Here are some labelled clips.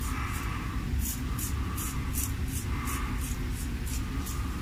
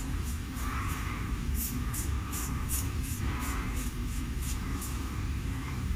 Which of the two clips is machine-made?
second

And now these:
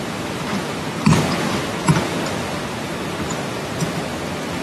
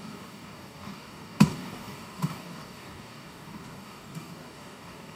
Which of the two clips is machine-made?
second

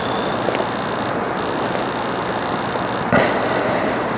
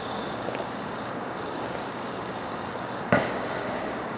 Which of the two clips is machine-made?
second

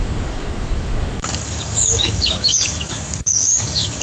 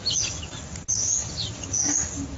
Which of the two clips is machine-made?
first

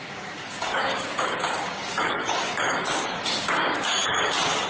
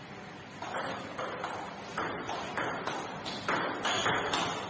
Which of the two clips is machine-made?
first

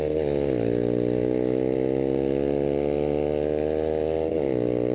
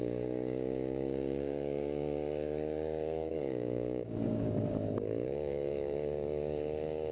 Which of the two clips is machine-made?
second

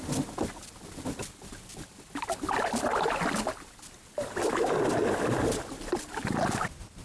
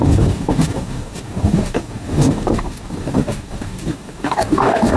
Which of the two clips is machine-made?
second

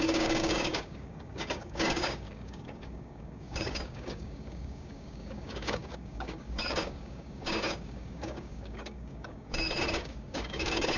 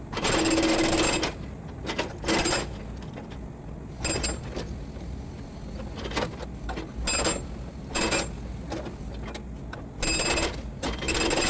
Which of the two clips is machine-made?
first